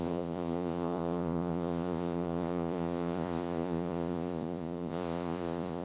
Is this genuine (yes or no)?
no